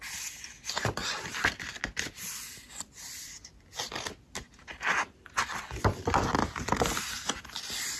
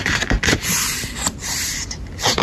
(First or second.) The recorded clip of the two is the first